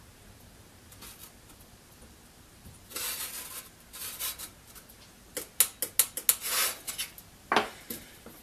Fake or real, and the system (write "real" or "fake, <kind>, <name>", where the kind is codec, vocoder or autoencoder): real